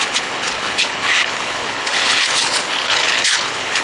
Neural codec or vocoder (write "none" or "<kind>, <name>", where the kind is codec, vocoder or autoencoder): codec, HILCodec